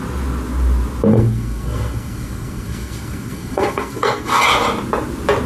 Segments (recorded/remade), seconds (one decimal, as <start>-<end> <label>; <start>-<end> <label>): 0.0-1.1 recorded; 1.1-4.4 remade; 4.4-5.5 recorded